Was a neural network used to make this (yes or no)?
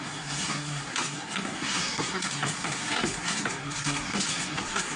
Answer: yes